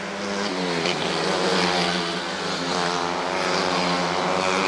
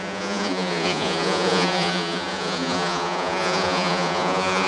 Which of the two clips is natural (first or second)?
first